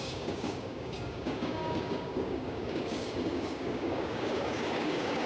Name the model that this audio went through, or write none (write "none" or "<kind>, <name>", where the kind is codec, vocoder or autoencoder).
codec, DAC